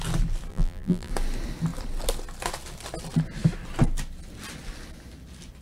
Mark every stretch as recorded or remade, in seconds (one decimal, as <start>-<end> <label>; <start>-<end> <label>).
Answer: 0.0-0.5 recorded; 0.5-1.1 remade; 1.1-5.6 recorded